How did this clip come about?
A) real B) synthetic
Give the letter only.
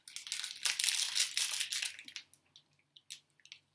A